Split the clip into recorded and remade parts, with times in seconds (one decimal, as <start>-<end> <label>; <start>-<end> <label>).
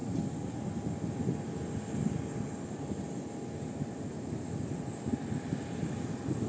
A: 0.0-6.5 recorded